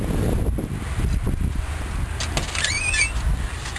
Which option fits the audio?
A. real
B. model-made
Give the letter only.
A